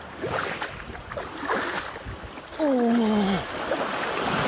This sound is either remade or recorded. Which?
recorded